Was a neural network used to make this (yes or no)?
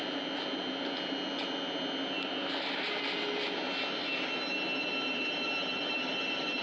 no